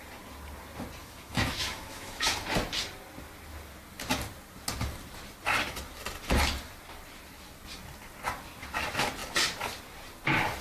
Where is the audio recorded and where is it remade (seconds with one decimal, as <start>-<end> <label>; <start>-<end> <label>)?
0.0-1.0 recorded; 1.0-2.3 remade; 2.3-10.6 recorded